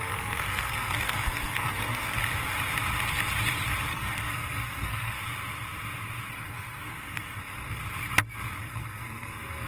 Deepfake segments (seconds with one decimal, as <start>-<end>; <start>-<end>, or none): 0.0-2.2; 3.9-5.2; 6.3-7.8; 8.6-9.7